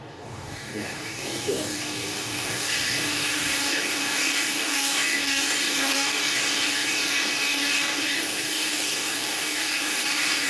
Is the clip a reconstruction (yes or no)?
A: yes